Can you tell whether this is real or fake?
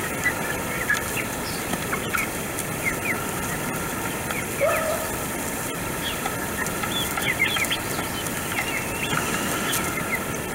real